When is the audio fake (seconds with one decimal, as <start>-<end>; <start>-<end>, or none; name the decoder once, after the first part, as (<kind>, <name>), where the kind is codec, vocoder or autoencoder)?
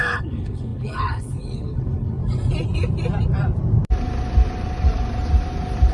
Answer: 0.0-2.2 (codec, HILCodec)